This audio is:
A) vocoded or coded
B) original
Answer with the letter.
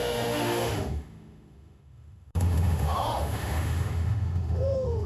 A